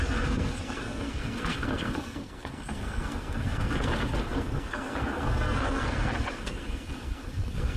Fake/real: fake